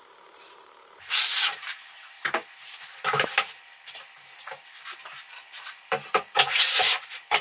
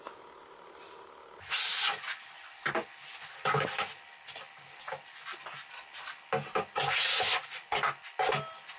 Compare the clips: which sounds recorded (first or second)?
second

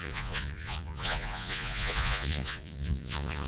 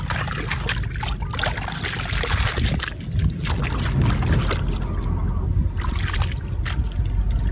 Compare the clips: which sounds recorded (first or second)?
second